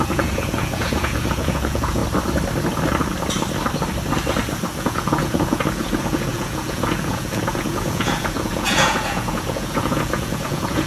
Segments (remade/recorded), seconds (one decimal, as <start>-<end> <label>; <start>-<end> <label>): 0.0-2.0 remade; 2.0-4.8 recorded; 4.8-10.9 remade